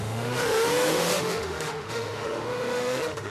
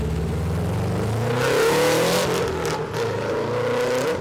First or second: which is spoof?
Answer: first